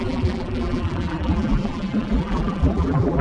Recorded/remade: remade